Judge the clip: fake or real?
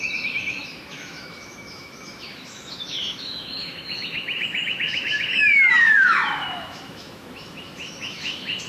fake